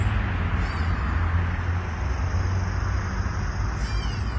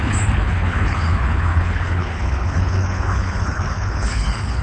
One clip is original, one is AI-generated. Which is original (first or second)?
first